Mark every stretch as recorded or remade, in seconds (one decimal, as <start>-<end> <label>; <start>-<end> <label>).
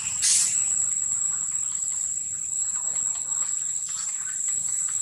0.0-5.0 recorded